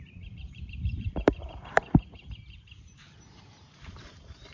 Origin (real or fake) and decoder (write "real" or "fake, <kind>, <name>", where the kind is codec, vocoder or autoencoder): fake, vocoder, BigVGAN v2